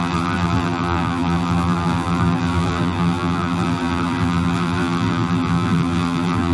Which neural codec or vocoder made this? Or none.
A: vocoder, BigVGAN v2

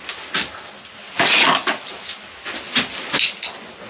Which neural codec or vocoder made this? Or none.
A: none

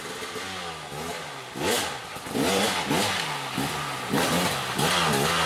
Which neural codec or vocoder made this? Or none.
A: none